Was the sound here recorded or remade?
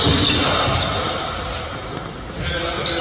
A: recorded